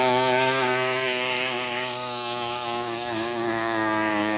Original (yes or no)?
no